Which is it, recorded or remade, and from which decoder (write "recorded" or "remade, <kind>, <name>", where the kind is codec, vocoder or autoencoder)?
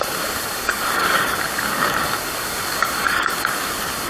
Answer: remade, codec, DAC